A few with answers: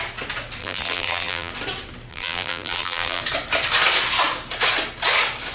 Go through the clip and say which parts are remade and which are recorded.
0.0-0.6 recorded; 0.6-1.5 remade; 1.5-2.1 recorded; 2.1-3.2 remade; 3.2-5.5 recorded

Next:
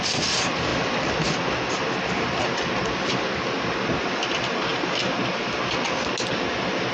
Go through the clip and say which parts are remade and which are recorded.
0.0-6.9 recorded

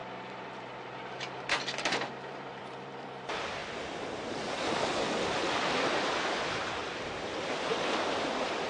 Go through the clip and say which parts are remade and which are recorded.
0.0-3.6 remade; 3.6-5.2 recorded; 5.2-8.7 remade

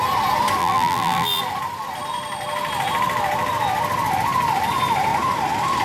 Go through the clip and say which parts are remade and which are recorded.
0.0-0.6 recorded; 0.6-1.4 remade; 1.4-5.8 recorded

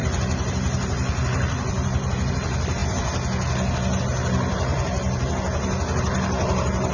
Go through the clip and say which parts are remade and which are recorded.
0.0-2.3 remade; 2.3-4.7 recorded; 4.7-5.3 remade; 5.3-6.9 recorded

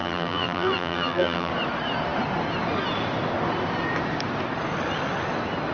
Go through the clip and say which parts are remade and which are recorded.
0.0-1.5 remade; 1.5-5.7 recorded